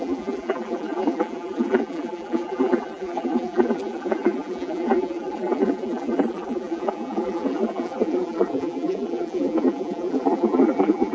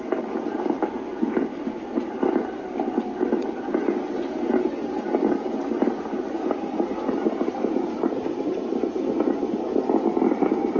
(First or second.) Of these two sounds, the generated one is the first